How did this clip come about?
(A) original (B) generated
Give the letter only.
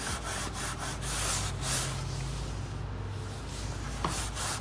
A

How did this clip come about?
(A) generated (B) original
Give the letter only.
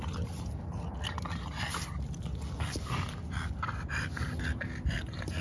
B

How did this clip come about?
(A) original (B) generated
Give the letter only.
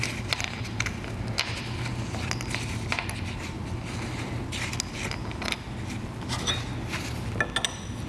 A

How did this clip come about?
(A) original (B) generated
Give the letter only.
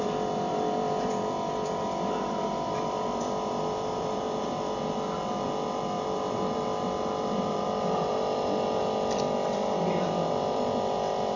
B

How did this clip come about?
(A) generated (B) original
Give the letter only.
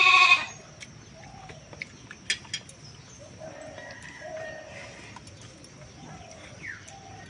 B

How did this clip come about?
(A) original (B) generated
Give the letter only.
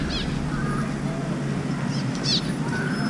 A